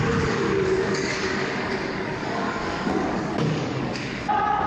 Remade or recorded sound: remade